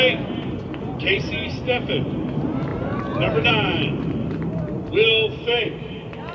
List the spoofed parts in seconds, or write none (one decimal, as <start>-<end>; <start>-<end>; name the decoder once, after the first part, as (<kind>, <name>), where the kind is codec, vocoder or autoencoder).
0.0-6.3 (vocoder, BigVGAN v2)